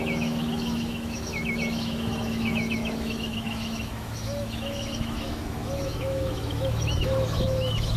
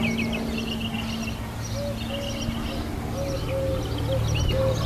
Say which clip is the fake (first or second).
first